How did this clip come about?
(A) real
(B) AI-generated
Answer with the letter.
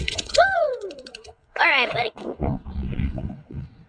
B